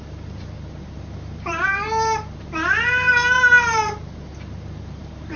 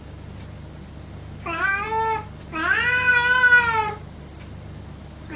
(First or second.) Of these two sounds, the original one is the second